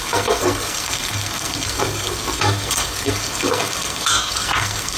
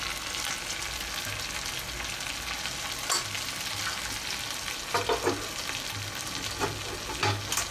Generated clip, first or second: first